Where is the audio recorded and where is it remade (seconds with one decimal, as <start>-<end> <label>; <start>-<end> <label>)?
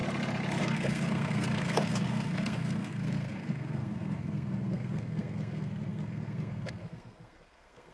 0.0-0.6 recorded; 0.6-7.9 remade